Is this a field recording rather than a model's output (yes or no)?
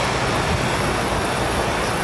no